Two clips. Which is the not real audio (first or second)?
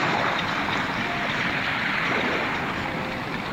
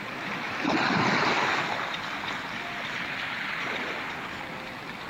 first